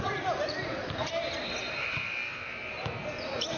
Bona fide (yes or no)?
yes